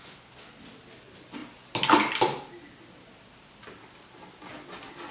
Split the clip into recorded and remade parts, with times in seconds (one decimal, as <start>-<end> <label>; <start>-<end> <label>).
0.0-5.1 recorded